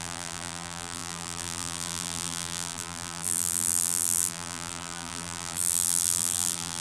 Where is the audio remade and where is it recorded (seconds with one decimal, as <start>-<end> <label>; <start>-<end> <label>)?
0.0-6.8 remade